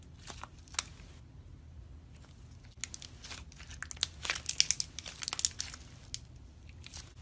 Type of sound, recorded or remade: recorded